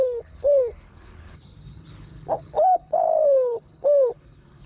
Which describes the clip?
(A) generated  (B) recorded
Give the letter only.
A